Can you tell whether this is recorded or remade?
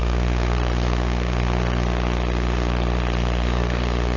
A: remade